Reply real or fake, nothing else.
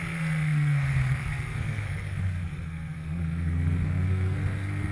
fake